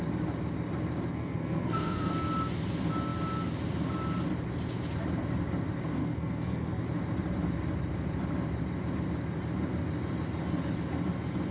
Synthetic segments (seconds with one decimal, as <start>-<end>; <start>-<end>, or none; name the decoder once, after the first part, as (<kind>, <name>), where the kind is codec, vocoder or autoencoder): 1.1-2.1 (codec, SNAC); 6.0-6.8